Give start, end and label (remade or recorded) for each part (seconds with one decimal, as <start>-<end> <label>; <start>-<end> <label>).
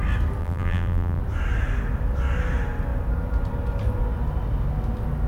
0.0-0.4 recorded; 0.4-1.2 remade; 1.2-5.3 recorded